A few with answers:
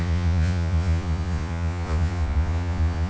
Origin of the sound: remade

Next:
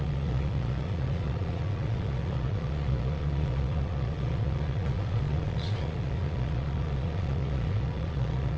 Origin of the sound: remade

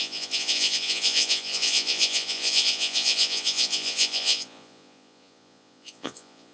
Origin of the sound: remade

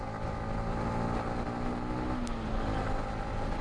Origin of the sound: recorded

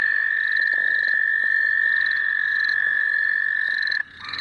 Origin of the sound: remade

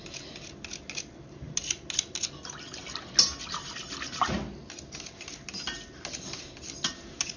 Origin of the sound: recorded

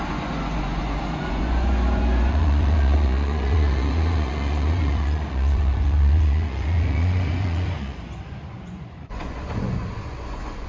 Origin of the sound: remade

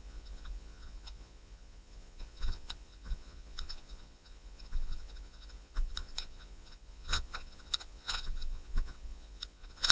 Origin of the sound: remade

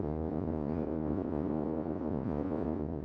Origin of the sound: remade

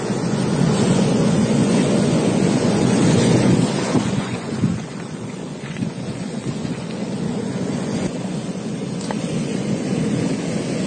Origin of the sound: remade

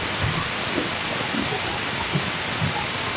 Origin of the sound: recorded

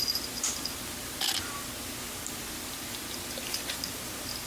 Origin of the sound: recorded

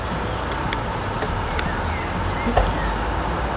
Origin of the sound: recorded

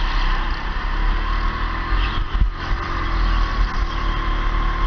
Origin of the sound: recorded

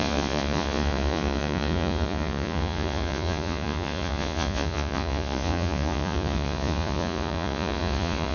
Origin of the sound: remade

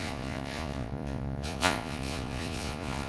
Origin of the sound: remade